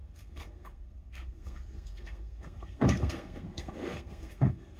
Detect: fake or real fake